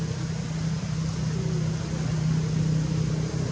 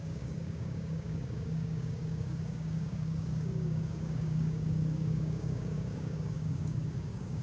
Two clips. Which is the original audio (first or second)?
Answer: first